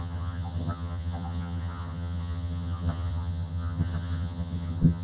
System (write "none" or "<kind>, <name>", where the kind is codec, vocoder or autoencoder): vocoder, HiFi-GAN